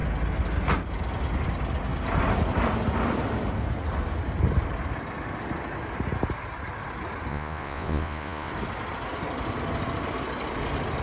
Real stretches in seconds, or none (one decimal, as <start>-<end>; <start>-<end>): 0.0-7.3; 8.5-11.0